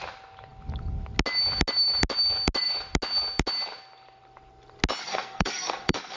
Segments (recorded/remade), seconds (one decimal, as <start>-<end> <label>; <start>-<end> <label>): 0.0-5.0 recorded; 5.0-6.2 remade